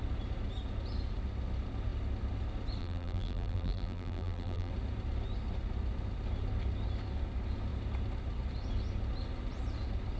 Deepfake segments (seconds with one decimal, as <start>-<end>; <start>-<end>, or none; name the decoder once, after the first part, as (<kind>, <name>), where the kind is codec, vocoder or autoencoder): 2.8-4.7 (vocoder, BigVGAN v2)